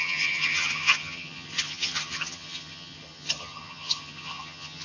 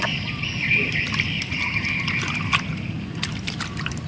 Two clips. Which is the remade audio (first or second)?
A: first